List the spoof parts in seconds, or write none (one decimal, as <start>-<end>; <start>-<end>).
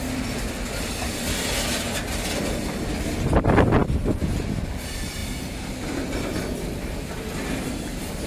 3.8-4.5